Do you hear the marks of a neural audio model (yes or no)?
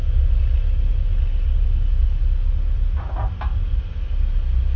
no